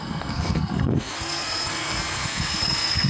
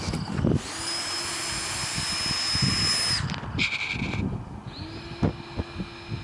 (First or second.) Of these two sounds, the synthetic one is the first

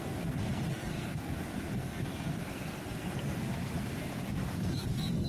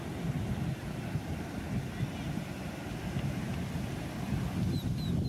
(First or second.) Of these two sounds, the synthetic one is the first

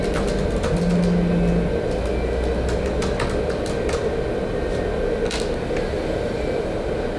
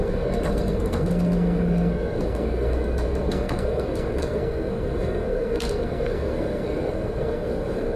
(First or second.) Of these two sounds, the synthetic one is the second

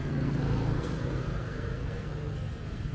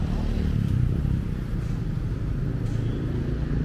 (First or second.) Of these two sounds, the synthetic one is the first